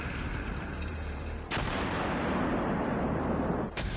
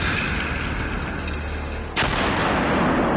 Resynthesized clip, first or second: first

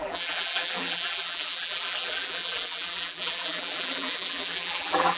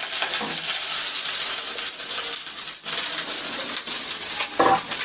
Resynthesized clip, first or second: first